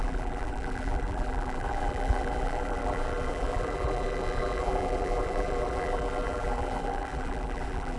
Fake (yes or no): yes